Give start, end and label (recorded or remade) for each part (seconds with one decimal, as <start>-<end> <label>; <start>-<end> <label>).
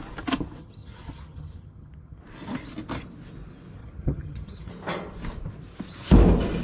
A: 0.0-0.6 recorded; 0.6-2.2 remade; 2.2-3.8 recorded; 3.8-4.7 remade; 4.7-6.6 recorded